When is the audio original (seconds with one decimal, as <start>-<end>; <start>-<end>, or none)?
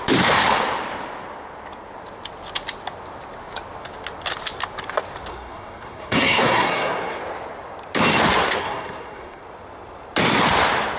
0.0-5.3; 7.2-8.6; 9.4-11.0